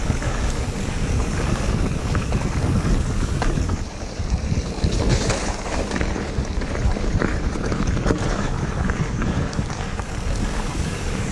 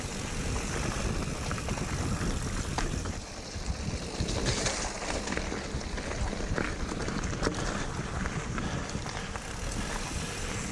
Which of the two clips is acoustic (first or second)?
second